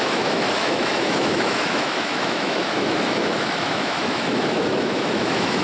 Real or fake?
fake